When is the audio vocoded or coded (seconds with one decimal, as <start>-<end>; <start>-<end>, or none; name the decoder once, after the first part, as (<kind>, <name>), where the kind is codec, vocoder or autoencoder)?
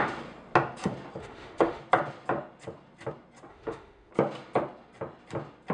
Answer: 1.2-1.8 (autoencoder, DAC-VAE); 3.5-4.1